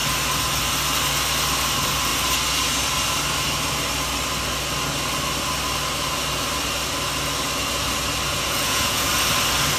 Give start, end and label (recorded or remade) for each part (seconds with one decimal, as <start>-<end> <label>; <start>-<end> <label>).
0.0-8.3 recorded; 8.3-9.1 remade; 9.1-9.8 recorded